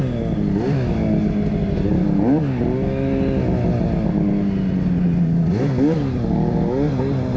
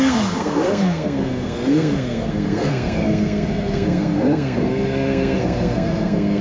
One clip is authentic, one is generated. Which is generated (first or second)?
second